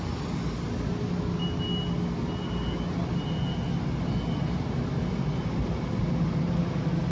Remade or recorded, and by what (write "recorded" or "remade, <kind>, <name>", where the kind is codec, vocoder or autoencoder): recorded